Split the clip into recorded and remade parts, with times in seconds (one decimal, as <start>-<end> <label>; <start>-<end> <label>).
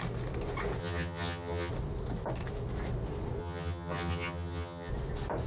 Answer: 0.0-0.8 recorded; 0.8-1.7 remade; 1.7-3.4 recorded; 3.4-4.9 remade; 4.9-5.5 recorded